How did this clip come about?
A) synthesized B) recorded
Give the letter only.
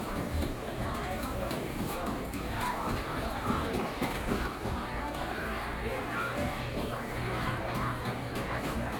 A